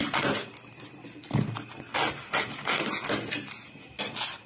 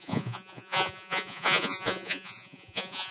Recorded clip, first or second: first